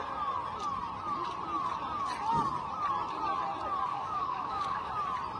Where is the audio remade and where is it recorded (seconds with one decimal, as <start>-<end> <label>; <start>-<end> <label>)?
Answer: 0.0-3.9 recorded; 3.9-4.9 remade; 4.9-5.4 recorded